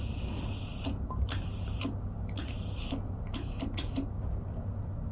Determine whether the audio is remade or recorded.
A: recorded